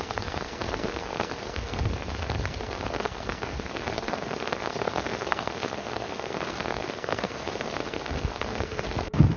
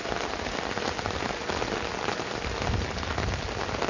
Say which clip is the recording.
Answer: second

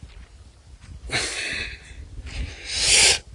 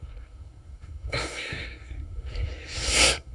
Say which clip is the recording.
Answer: first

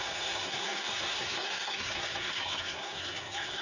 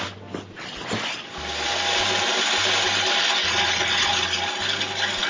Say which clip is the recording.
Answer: second